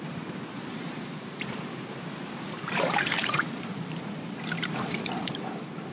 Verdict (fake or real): fake